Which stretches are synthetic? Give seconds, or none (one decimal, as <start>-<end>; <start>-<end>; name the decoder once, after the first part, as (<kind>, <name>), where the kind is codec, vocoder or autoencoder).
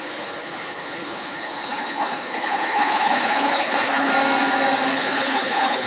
0.0-4.1 (codec, HILCodec); 4.9-5.9